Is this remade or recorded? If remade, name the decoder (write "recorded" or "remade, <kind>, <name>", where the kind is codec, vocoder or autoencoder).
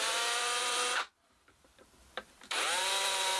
remade, vocoder, BigVGAN v2